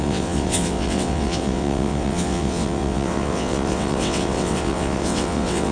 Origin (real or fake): fake